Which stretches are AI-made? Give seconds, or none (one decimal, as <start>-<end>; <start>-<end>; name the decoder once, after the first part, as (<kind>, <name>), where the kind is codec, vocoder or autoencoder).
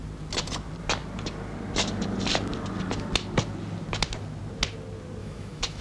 5.2-5.8 (autoencoder, DAC-VAE)